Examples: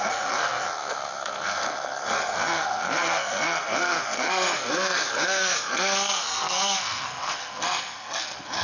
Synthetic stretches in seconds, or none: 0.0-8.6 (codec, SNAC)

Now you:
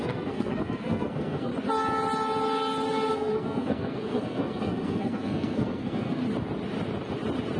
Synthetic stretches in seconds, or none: 0.0-1.5 (codec, SNAC); 3.1-6.2

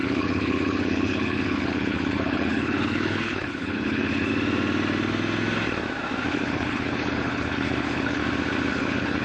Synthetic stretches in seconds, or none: 0.0-4.3 (codec, HILCodec); 6.3-8.2; 8.7-9.2

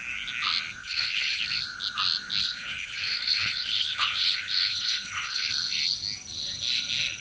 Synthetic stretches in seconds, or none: 0.8-1.4 (codec, HILCodec); 2.4-5.5

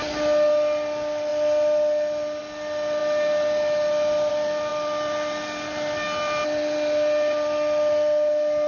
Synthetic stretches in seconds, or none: none

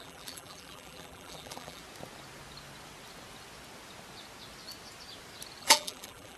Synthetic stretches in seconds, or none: 0.0-1.8 (vocoder, BigVGAN v2); 5.6-6.4

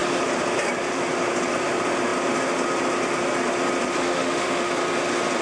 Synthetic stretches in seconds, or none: 4.0-4.7 (autoencoder, DAC-VAE)